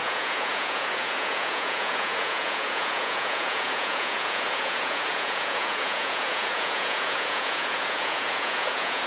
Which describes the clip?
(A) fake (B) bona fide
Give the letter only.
A